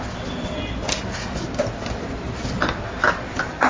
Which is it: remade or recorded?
recorded